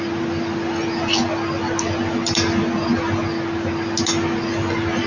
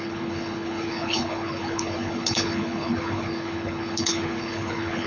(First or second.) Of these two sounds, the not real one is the second